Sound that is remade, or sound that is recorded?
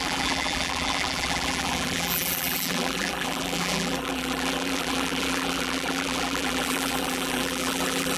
remade